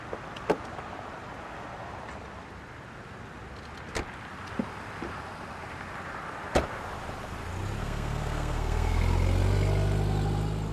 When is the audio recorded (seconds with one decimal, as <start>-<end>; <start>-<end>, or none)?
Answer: 0.0-7.8; 9.0-10.7